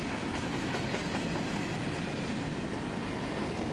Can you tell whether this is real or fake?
real